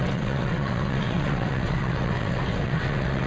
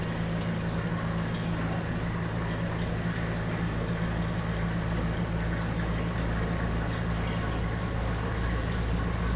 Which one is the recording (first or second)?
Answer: second